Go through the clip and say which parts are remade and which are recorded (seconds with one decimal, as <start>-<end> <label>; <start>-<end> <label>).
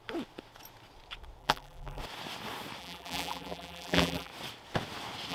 0.0-1.4 recorded; 1.4-2.0 remade; 2.0-2.8 recorded; 2.8-4.3 remade; 4.3-5.3 recorded